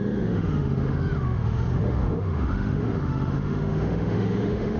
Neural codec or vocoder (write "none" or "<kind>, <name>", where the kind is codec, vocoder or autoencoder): autoencoder, DAC-VAE